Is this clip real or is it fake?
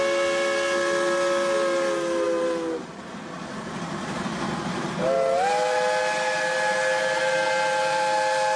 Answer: real